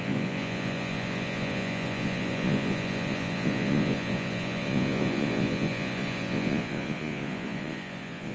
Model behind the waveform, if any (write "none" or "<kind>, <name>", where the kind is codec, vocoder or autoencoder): vocoder, Vocos